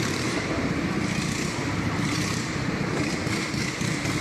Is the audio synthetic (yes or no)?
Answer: yes